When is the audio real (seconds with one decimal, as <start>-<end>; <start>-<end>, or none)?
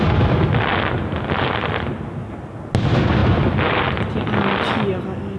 0.0-5.4